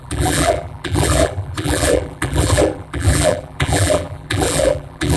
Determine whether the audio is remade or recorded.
remade